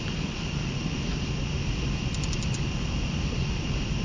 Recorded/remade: recorded